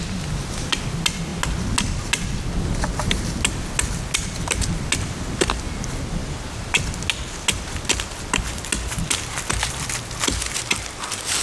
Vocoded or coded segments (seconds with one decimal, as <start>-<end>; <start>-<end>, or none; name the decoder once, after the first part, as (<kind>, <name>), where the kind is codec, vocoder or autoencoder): none